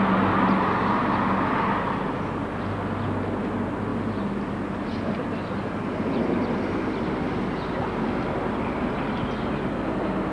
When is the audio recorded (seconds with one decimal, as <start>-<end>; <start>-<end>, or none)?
0.0-10.3

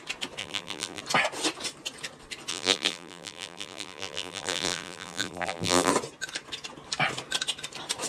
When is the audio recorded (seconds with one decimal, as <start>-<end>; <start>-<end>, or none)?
0.0-0.4; 1.0-2.5; 5.9-8.1

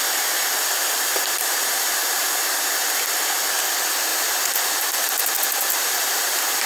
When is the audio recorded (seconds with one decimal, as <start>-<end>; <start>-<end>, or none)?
0.0-0.8; 2.5-4.1

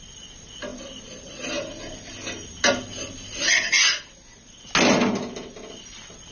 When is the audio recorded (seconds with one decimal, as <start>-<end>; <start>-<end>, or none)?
0.0-0.7; 1.3-6.3

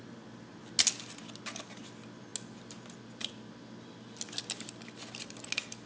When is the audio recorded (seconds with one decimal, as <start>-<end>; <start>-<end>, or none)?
0.0-5.9

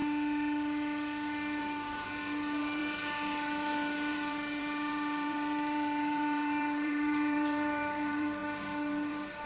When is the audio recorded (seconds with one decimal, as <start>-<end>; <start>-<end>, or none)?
0.0-1.6